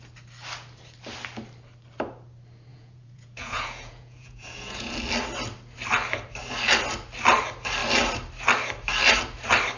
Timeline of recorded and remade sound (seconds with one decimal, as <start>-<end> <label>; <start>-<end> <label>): 0.0-2.7 recorded; 2.7-4.9 remade; 4.9-9.8 recorded